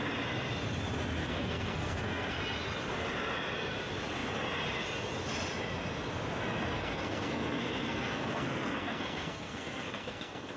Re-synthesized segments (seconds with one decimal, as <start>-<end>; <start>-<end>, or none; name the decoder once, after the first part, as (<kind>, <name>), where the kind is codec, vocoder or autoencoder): 1.2-2.4 (codec, SNAC); 6.7-10.6